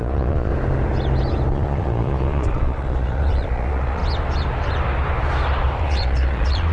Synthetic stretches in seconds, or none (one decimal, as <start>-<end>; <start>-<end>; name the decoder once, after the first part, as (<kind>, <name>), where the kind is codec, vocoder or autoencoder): 0.0-0.5 (vocoder, Vocos); 1.5-4.0; 5.8-6.7